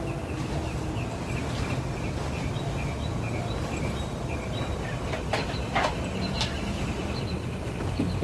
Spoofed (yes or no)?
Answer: no